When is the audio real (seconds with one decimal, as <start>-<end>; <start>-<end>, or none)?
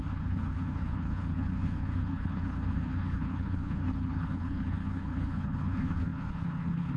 none